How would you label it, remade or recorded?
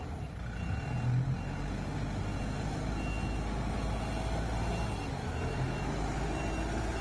recorded